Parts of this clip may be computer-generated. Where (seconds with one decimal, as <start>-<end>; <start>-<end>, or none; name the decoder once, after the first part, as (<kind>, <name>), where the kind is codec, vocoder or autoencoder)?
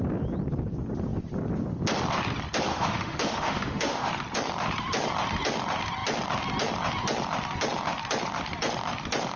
2.7-4.1 (autoencoder, DAC-VAE)